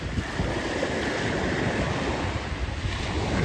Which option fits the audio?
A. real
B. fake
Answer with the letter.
A